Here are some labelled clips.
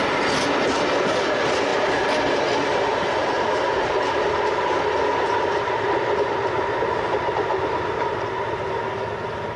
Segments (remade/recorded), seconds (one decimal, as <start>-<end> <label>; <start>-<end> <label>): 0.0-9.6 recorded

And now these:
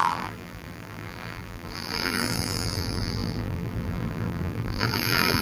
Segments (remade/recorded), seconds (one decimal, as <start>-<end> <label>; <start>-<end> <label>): 0.0-5.4 remade

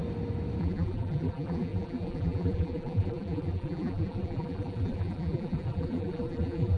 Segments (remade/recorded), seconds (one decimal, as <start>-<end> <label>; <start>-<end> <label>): 0.0-0.6 recorded; 0.6-6.8 remade

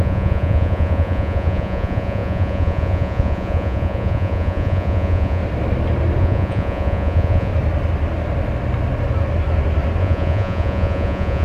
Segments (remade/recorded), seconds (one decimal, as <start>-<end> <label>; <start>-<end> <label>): 0.0-5.4 remade; 5.4-6.2 recorded; 6.2-7.5 remade; 7.5-10.0 recorded; 10.0-11.4 remade